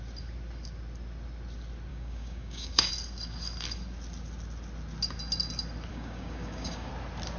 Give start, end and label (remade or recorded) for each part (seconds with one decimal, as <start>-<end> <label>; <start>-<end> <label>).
0.0-1.9 recorded; 1.9-2.9 remade; 2.9-5.9 recorded; 5.9-6.9 remade; 6.9-7.4 recorded